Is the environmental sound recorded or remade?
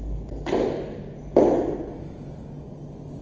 recorded